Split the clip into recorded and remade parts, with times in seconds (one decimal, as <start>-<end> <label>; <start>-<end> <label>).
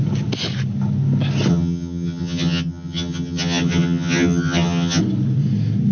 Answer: 0.0-1.5 recorded; 1.5-5.0 remade; 5.0-5.9 recorded